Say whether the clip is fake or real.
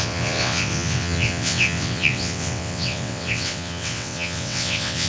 fake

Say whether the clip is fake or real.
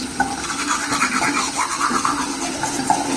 real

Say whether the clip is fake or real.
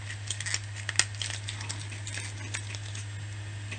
real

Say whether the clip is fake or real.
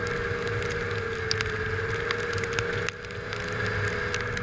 real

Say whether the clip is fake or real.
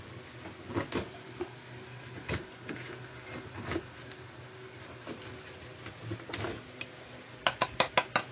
real